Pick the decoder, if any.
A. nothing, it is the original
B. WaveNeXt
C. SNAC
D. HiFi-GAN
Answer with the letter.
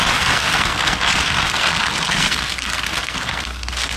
C